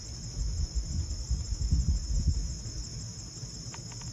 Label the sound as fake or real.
real